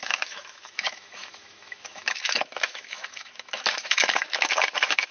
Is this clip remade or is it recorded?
remade